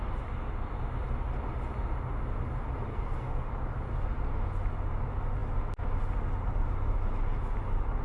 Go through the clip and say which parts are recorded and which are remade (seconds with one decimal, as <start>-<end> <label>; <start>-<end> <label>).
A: 0.0-2.9 recorded; 2.9-3.5 remade; 3.5-8.0 recorded